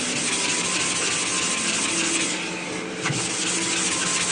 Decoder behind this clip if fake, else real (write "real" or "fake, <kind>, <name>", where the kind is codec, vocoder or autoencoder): real